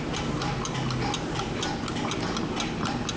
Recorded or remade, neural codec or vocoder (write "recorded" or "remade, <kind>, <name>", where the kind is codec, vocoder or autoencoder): recorded